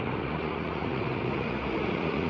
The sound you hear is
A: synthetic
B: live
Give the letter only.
A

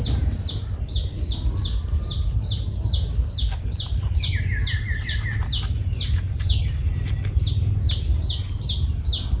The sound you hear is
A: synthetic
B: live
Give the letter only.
B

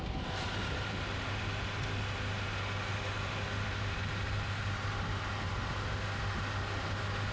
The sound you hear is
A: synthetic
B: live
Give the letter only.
B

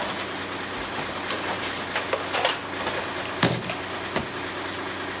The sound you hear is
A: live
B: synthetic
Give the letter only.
A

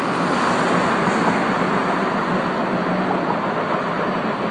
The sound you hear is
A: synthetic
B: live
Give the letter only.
B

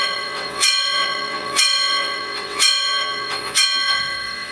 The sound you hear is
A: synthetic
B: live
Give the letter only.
A